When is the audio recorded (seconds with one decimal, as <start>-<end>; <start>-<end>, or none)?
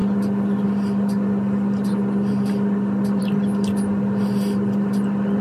0.0-5.4